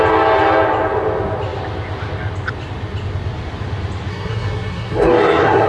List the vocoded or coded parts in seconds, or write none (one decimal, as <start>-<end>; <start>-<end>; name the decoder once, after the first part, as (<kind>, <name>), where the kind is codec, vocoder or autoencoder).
4.1-5.7 (codec, SNAC)